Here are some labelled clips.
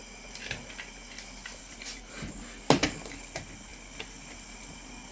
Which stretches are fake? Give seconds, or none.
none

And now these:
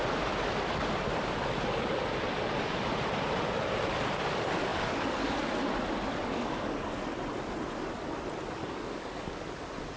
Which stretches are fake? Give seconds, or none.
4.7-5.4 (codec, DAC); 6.2-7.1; 8.6-9.4

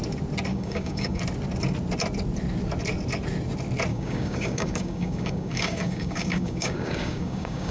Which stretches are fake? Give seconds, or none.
0.5-1.2 (codec, DAC); 3.9-7.7

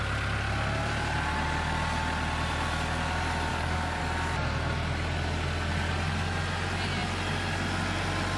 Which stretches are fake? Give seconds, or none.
3.5-4.0 (codec, DAC)

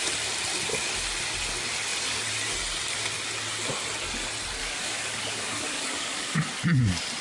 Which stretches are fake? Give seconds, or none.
4.6-6.4 (codec, DAC)

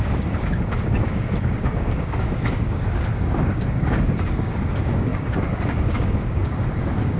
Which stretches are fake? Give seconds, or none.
0.0-7.2 (codec, DAC)